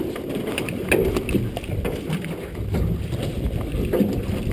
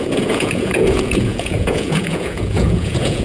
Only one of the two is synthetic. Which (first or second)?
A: second